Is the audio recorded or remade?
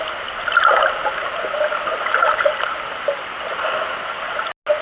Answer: recorded